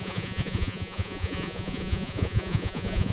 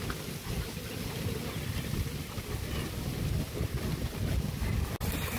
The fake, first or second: first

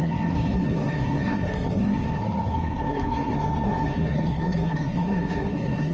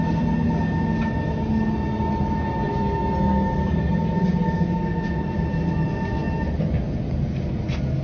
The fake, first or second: first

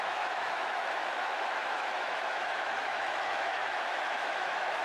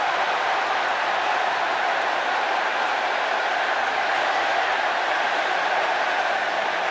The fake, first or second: first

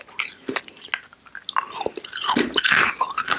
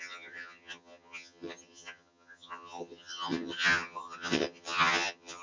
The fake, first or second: second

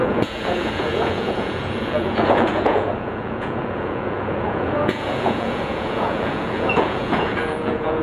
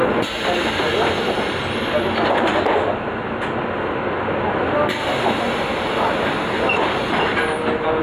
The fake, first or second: first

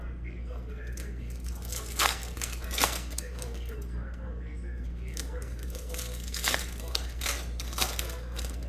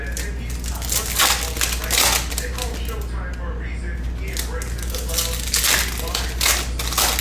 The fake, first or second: first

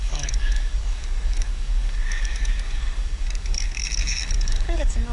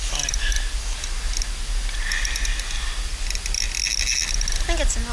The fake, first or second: first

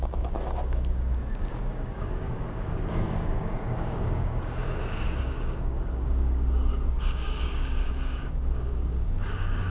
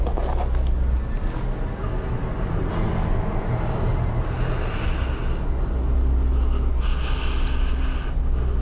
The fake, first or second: first